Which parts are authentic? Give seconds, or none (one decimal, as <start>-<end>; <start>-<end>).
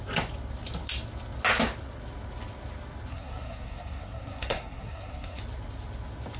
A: 0.0-3.1; 5.4-6.4